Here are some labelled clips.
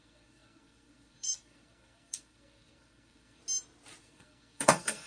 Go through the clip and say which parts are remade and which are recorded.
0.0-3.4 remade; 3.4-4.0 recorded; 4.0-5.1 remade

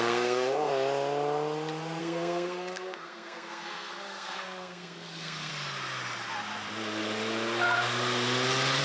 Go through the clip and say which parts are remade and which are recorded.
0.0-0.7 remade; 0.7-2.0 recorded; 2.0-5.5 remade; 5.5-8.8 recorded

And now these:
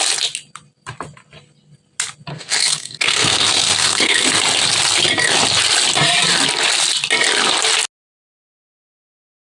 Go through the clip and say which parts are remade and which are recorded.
0.0-2.3 recorded; 2.3-4.4 remade; 4.4-9.5 recorded

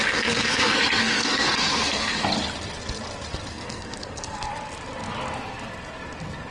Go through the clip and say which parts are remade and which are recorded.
0.0-2.2 remade; 2.2-3.5 recorded; 3.5-4.5 remade; 4.5-6.5 recorded